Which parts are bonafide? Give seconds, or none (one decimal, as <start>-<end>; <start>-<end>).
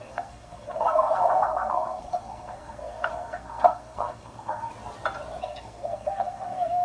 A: 4.7-5.4